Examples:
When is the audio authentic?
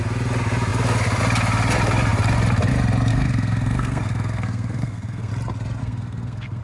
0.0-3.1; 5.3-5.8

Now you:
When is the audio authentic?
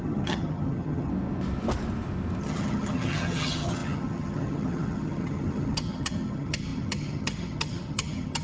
1.1-2.4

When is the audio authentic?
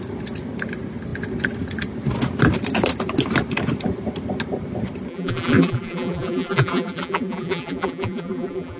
0.0-5.1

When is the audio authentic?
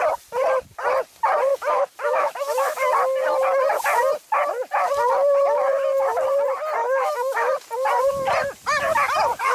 0.0-1.5; 2.7-6.8; 7.5-9.5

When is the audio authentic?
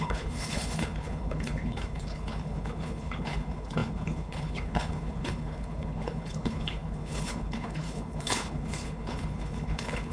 none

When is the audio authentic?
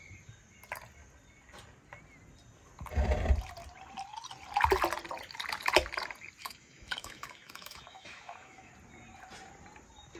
0.0-6.4; 8.7-10.2